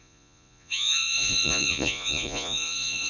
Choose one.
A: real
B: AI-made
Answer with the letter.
B